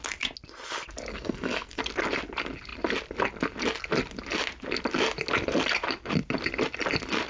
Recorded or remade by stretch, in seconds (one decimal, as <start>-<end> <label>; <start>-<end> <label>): 0.0-1.1 recorded; 1.1-1.8 remade; 1.8-7.3 recorded